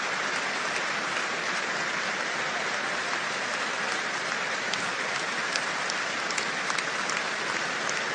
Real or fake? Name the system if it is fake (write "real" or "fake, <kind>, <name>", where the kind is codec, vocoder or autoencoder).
real